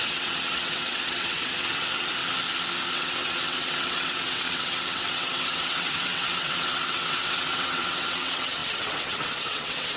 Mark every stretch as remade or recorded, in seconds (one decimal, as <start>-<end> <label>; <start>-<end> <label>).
0.0-2.2 remade; 2.2-2.9 recorded; 2.9-10.0 remade